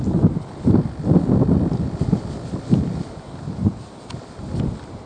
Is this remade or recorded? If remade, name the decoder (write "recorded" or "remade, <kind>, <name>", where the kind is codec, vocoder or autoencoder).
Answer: recorded